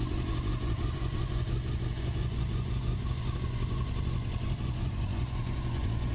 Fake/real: fake